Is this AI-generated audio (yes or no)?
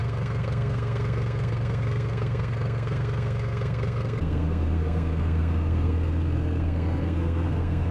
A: yes